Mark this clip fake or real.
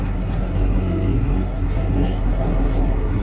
fake